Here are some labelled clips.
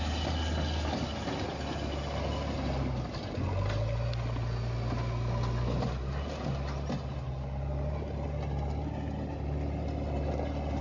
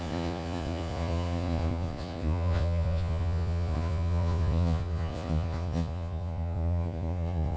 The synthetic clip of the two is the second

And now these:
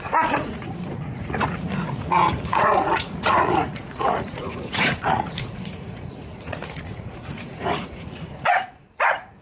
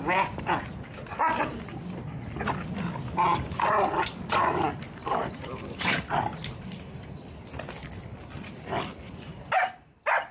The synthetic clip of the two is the first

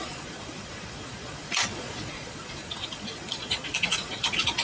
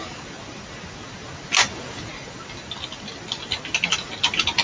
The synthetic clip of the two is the first